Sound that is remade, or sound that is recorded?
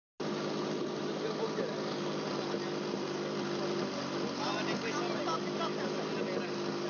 recorded